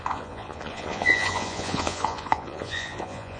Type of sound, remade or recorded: remade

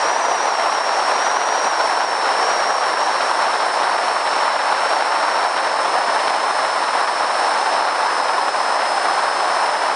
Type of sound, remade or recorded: recorded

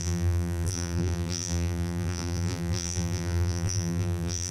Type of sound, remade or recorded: remade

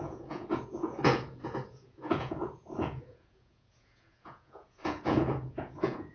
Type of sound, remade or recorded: remade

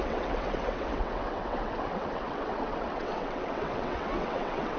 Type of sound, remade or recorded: remade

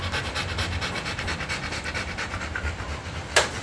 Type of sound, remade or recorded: recorded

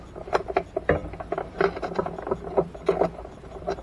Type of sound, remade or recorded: recorded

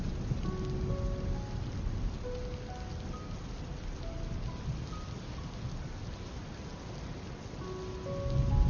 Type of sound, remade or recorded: recorded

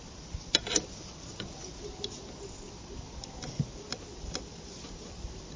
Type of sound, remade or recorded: recorded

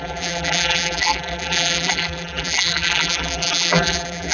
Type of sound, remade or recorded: remade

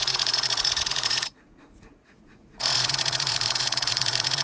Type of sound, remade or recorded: remade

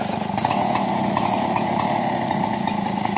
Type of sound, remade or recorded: remade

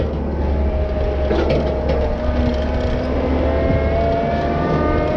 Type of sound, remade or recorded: recorded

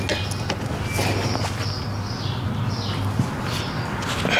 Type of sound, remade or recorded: recorded